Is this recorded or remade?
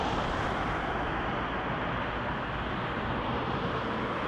recorded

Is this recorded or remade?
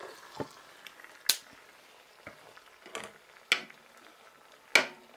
recorded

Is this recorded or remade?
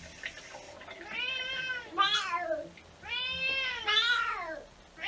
recorded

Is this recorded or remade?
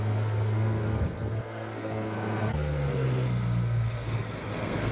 remade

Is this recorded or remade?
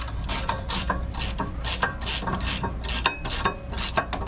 recorded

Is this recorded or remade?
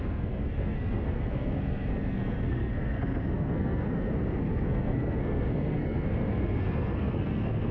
remade